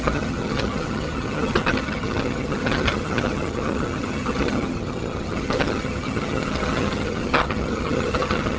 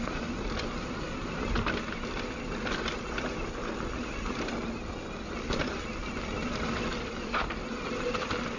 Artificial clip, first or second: first